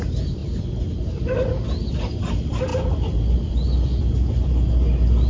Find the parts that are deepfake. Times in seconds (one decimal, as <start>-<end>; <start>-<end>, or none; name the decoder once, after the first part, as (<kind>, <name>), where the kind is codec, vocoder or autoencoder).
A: none